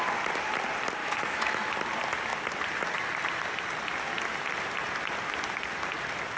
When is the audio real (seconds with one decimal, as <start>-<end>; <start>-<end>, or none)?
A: 0.0-1.0; 1.7-6.4